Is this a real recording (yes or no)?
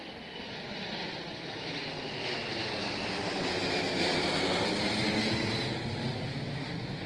yes